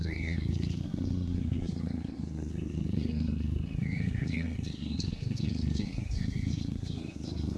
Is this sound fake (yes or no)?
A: yes